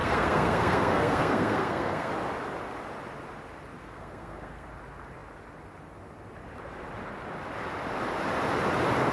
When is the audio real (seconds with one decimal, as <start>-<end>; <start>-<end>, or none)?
2.1-3.8; 4.7-9.1